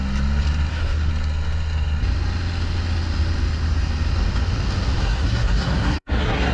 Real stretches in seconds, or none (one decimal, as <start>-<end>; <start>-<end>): 0.0-0.7; 1.1-5.0